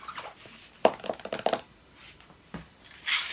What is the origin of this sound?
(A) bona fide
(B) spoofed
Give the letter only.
B